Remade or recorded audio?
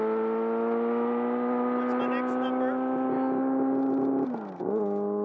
recorded